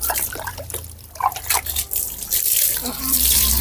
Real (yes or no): no